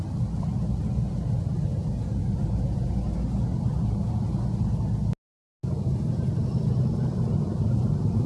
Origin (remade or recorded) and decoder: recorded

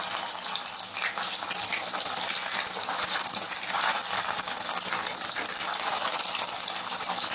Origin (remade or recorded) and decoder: recorded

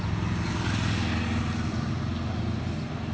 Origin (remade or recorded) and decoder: recorded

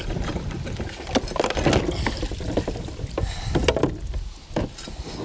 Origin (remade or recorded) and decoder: recorded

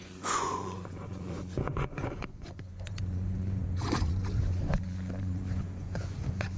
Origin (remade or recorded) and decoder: remade, vocoder, Vocos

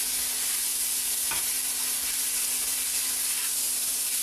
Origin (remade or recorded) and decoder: recorded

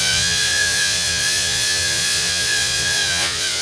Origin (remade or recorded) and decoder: remade, vocoder, Vocos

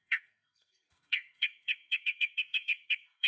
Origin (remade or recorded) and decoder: remade, codec, SNAC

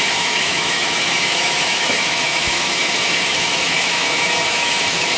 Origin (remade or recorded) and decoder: remade, autoencoder, DAC-VAE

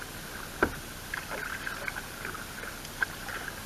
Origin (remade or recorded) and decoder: recorded